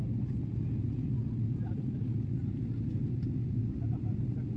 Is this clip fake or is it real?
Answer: real